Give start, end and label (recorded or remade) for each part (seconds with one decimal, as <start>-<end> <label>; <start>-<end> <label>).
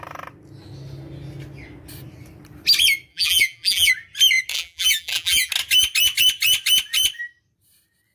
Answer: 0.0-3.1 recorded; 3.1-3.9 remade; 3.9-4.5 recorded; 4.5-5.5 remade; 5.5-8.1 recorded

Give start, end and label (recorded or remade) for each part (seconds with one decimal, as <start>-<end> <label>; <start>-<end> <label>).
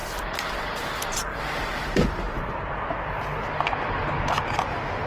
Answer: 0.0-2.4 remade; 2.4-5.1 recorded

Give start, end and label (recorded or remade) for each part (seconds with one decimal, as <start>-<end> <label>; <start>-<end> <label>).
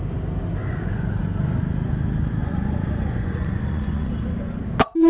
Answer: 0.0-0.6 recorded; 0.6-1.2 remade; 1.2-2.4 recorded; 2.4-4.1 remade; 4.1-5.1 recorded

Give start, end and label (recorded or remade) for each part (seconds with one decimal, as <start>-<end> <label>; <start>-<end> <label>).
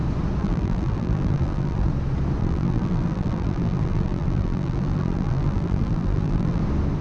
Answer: 0.0-0.4 recorded; 0.4-1.9 remade; 1.9-2.4 recorded; 2.4-6.6 remade; 6.6-7.0 recorded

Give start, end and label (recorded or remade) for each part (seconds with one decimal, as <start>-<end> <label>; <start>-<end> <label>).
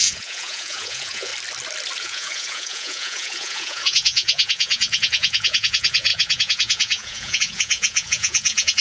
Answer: 0.0-1.3 remade; 1.3-2.0 recorded; 2.0-8.8 remade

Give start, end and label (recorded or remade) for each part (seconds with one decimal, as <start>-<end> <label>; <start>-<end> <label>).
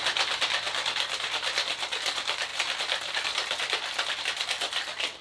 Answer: 0.0-5.2 recorded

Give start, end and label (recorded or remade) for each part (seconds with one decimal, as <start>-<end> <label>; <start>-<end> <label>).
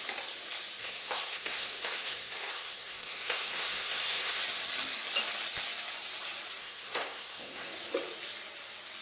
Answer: 0.0-0.8 recorded; 0.8-4.4 remade; 4.4-6.6 recorded; 6.6-7.7 remade; 7.7-9.0 recorded